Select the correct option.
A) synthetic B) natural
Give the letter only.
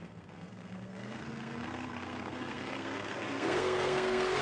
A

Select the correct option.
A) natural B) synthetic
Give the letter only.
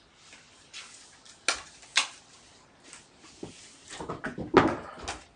A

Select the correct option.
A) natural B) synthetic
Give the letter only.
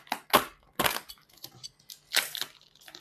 A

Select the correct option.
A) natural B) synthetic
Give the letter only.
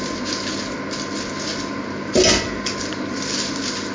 A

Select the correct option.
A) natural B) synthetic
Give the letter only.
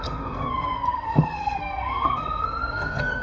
B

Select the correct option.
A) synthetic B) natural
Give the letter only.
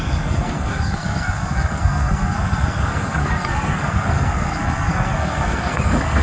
A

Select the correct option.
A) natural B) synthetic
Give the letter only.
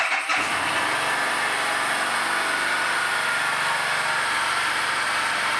A